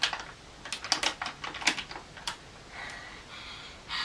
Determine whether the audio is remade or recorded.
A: recorded